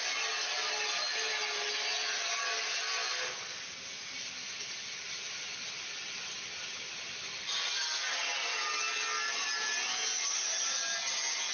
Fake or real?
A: real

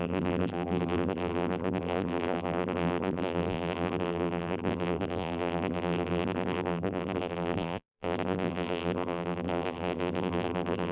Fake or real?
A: fake